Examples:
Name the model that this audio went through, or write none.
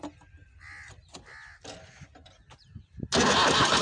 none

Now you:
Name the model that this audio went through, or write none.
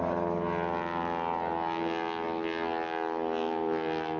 none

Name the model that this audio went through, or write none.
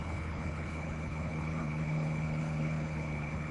codec, HILCodec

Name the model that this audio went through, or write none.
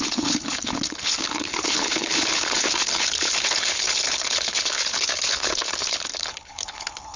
codec, HILCodec